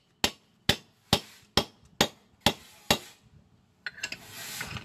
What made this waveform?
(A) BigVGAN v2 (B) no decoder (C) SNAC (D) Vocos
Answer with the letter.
B